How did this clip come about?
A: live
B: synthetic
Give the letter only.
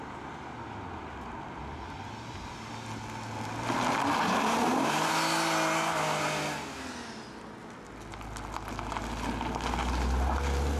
A